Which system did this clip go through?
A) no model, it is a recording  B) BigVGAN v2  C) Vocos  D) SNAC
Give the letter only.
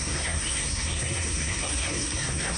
D